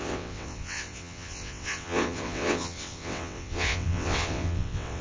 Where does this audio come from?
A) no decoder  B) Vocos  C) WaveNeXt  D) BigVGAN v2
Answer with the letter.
C